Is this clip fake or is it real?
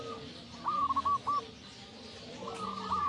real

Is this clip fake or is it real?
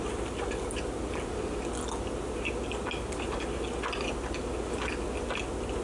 real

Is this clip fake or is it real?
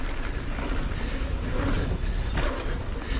real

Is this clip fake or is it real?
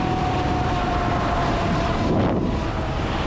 real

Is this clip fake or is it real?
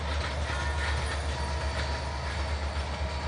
real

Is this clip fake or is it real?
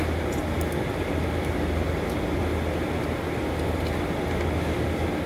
real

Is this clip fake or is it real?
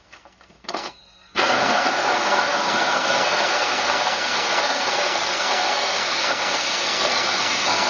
fake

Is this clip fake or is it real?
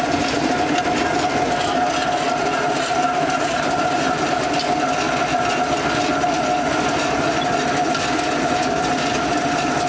real